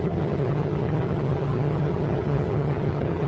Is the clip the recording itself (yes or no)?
no